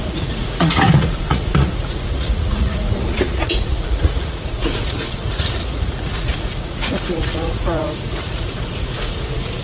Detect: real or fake fake